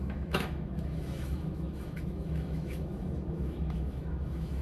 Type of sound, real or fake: fake